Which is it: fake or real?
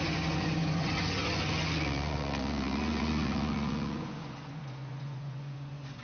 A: fake